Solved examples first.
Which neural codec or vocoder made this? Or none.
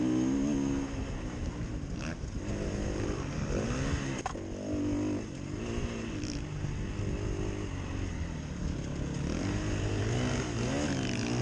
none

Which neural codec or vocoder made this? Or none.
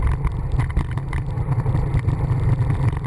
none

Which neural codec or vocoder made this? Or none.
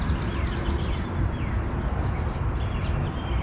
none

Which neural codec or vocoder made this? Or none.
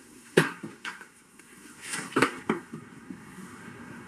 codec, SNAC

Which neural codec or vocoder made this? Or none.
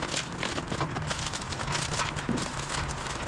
none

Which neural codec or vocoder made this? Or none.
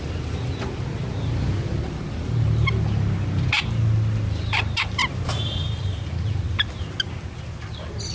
none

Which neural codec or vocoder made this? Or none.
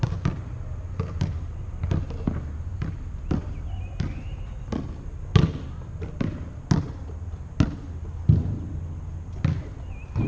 none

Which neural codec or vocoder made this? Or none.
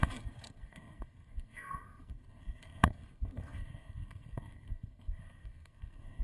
codec, SNAC